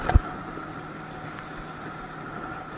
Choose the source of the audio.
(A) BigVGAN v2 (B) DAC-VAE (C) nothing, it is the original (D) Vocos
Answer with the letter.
C